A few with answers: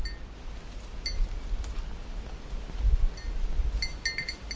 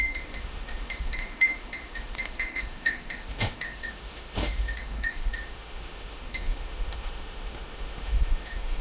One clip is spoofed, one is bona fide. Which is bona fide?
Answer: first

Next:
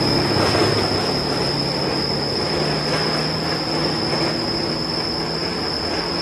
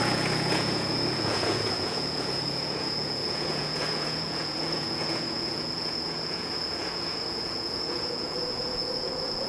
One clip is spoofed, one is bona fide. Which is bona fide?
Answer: first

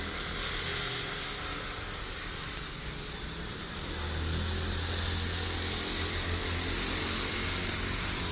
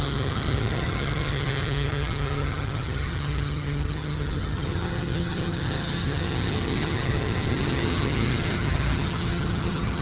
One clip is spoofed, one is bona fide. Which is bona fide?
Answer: first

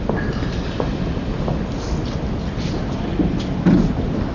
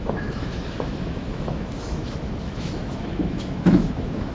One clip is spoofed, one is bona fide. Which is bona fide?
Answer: first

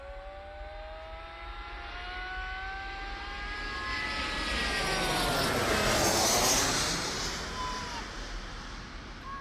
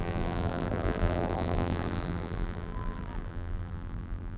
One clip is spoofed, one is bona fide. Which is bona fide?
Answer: first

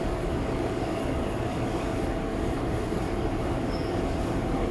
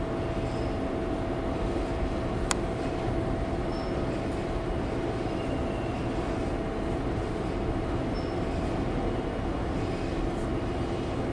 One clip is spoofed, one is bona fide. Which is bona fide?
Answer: second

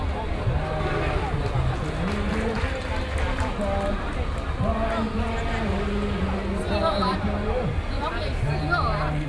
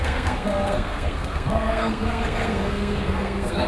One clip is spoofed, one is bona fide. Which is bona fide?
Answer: first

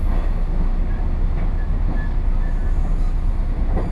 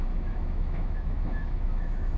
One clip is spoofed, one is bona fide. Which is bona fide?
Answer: first